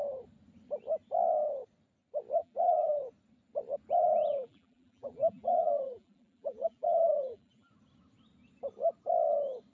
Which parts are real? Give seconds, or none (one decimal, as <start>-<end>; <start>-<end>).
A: 0.0-2.4; 3.0-4.3; 7.7-9.7